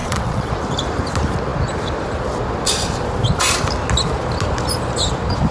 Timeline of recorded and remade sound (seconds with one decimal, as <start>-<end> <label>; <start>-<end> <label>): 0.0-0.5 remade; 0.5-5.5 recorded